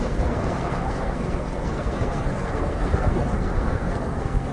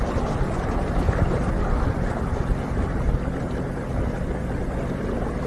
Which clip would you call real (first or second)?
second